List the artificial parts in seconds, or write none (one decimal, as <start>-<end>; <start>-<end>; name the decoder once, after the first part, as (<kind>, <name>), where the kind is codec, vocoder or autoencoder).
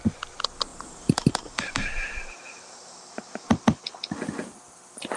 0.7-3.8 (vocoder, BigVGAN v2)